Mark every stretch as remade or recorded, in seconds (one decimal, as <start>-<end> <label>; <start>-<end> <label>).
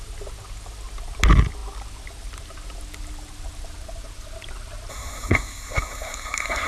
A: 0.0-4.9 recorded; 4.9-6.7 remade